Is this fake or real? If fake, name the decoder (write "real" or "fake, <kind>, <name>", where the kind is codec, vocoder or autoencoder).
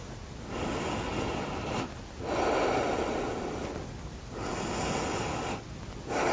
real